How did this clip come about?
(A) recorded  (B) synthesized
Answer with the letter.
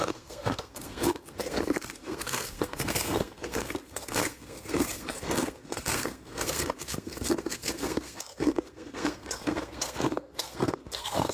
B